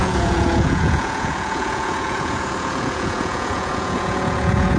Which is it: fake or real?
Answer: fake